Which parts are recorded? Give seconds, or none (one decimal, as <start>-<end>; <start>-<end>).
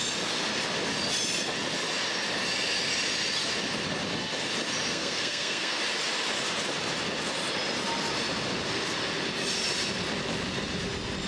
0.0-4.9; 5.8-11.3